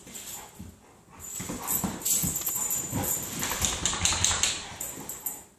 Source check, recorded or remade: recorded